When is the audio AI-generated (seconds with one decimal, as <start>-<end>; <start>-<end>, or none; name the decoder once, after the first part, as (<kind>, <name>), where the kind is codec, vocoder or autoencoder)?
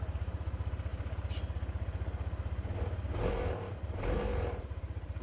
0.0-0.9 (vocoder, BigVGAN v2); 3.3-5.2